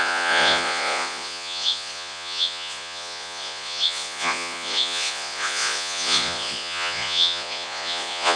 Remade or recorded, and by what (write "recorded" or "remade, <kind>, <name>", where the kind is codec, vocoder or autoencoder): remade, vocoder, Vocos